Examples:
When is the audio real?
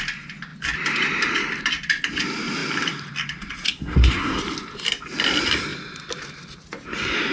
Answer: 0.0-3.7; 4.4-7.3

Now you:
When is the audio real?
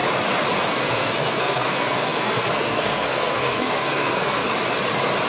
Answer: 0.0-0.7; 4.5-5.3